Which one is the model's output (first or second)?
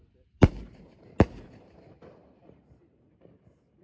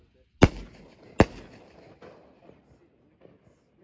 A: first